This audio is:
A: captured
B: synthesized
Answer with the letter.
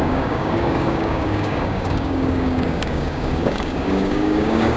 B